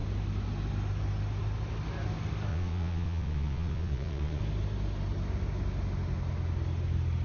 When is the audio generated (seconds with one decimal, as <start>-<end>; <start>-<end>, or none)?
2.5-4.4